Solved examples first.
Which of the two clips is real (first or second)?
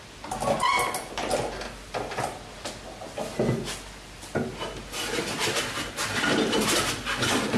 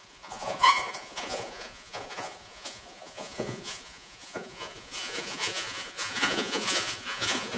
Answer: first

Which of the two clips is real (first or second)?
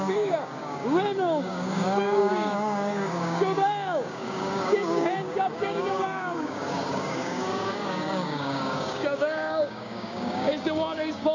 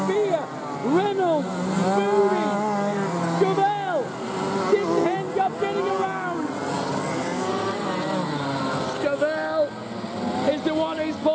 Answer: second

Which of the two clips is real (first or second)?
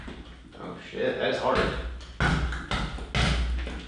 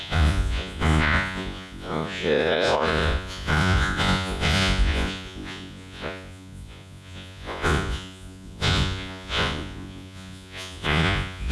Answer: first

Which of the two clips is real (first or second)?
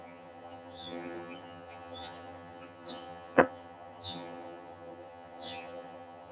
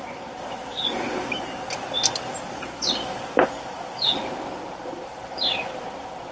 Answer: second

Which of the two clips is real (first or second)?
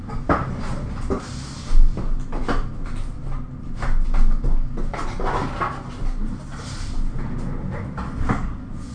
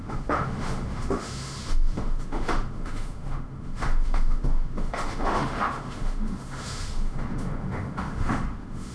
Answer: first